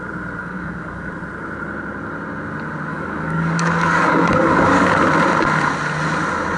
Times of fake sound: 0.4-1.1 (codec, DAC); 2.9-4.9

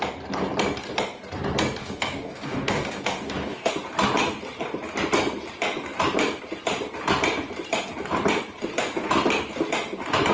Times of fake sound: 1.8-3.7 (codec, DAC)

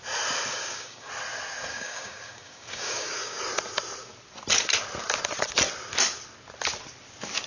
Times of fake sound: 0.5-1.1 (codec, DAC); 1.7-3.4

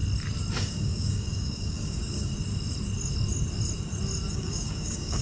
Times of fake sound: 0.6-2.3 (codec, DAC); 4.3-5.2

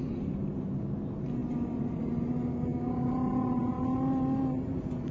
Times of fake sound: 2.5-3.1 (codec, DAC)

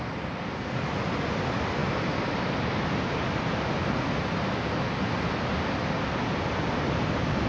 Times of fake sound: none